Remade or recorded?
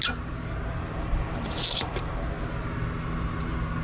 recorded